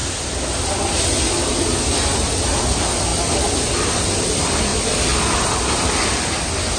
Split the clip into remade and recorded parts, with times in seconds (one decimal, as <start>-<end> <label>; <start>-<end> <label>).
0.0-6.8 recorded